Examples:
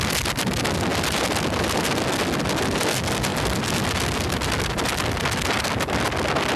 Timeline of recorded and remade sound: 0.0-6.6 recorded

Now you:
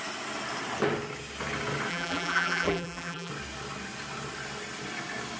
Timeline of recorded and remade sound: 0.0-1.9 recorded; 1.9-3.3 remade; 3.3-5.4 recorded

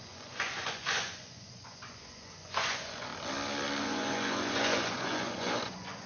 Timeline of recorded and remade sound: 0.0-3.1 remade; 3.1-3.8 recorded; 3.8-6.1 remade

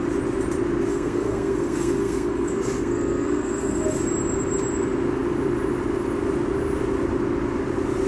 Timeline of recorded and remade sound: 0.0-0.9 recorded; 0.9-3.8 remade; 3.8-8.1 recorded

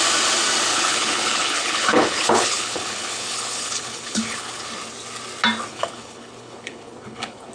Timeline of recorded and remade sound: 0.0-0.7 recorded; 0.7-4.7 remade; 4.7-5.7 recorded; 5.7-7.5 remade

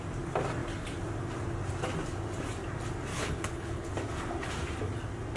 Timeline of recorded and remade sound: 0.0-3.1 recorded; 3.1-3.9 remade; 3.9-5.4 recorded

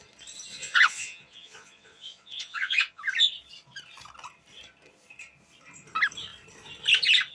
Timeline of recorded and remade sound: 0.0-0.5 recorded; 0.5-3.0 remade; 3.0-7.3 recorded